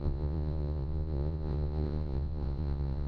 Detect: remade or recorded remade